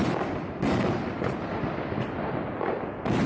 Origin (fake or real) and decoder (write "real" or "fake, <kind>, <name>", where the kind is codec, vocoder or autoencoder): real